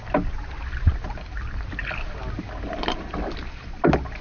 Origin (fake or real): real